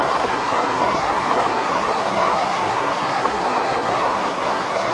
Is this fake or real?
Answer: fake